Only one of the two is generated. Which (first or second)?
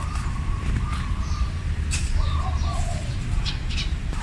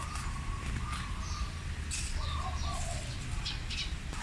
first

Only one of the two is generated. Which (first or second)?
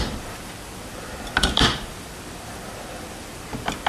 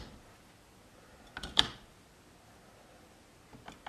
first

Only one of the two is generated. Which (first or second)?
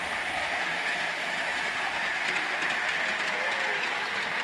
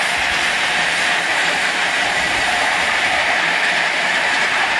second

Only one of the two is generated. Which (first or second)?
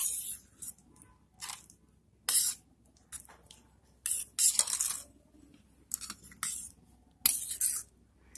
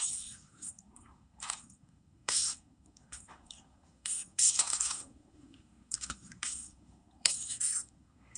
second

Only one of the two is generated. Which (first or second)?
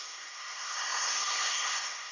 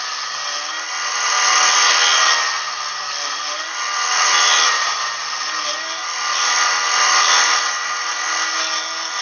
first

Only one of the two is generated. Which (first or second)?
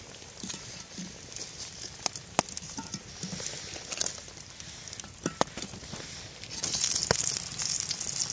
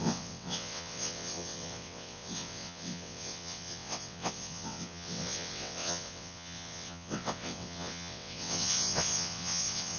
second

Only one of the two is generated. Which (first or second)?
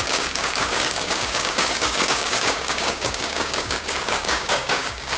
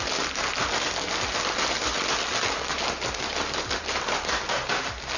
first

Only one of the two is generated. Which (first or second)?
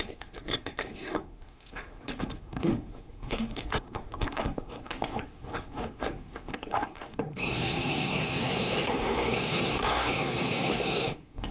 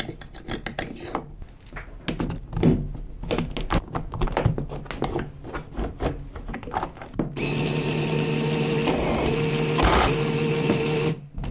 first